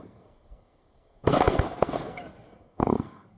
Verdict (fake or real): fake